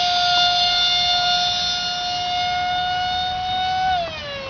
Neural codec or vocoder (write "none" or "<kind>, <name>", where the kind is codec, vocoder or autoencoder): none